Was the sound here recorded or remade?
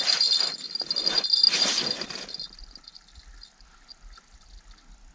recorded